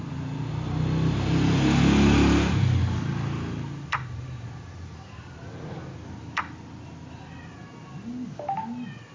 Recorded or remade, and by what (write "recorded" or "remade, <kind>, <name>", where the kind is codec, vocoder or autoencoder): recorded